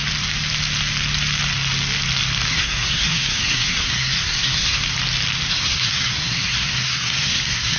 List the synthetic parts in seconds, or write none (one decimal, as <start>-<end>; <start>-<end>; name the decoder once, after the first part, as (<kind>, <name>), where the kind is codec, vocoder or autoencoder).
2.5-4.8 (codec, SNAC); 5.5-7.8